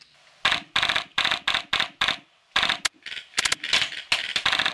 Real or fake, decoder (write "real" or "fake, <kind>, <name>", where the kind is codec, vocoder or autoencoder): real